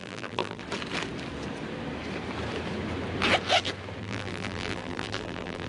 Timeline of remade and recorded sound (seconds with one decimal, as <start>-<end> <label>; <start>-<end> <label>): 0.0-0.6 remade; 0.6-4.0 recorded; 4.0-5.7 remade

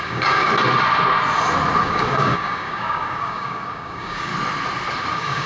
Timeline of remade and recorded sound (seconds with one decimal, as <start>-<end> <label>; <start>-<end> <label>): 0.0-0.5 remade; 0.5-1.8 recorded; 1.8-4.3 remade; 4.3-5.1 recorded; 5.1-5.5 remade